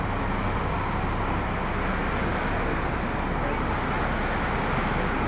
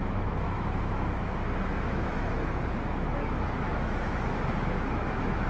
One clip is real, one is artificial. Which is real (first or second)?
first